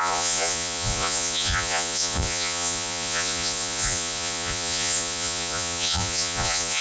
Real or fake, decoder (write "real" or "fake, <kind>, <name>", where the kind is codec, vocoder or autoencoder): fake, vocoder, Vocos